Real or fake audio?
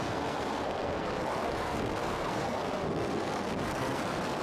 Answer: fake